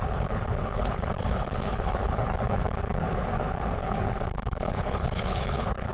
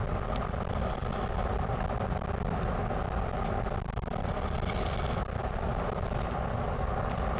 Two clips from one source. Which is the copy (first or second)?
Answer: first